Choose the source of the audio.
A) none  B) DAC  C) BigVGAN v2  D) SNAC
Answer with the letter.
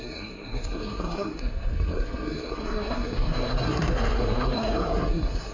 D